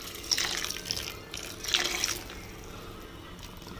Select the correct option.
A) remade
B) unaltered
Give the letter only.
B